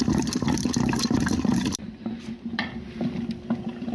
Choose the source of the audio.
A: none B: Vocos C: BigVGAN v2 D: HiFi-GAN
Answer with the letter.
C